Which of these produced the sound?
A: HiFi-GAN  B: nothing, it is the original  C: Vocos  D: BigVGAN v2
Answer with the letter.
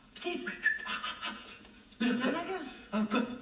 C